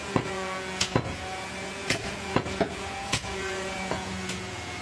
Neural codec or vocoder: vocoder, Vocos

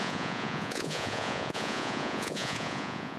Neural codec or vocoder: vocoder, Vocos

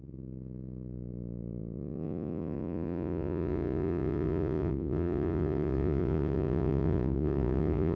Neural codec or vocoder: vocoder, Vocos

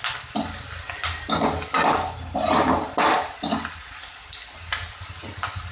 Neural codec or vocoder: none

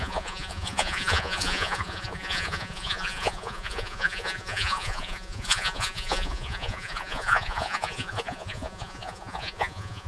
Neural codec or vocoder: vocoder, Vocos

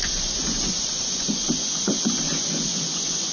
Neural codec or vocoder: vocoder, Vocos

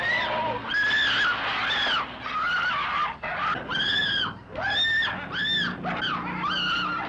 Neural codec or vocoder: none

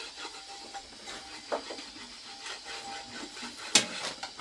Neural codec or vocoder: none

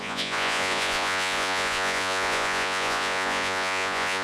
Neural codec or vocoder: vocoder, Vocos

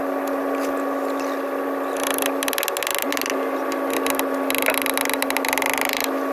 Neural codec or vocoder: none